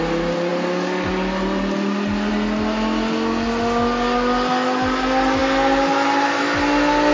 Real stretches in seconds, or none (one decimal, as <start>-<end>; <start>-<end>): 0.0-7.1